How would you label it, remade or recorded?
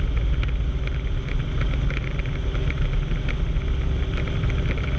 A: recorded